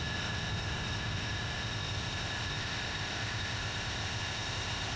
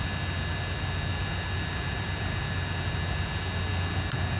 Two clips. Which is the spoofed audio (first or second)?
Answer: first